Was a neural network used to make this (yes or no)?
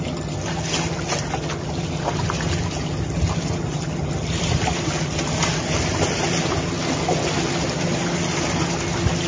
no